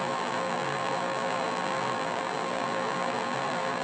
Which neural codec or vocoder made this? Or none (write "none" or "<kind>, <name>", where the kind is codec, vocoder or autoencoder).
vocoder, BigVGAN v2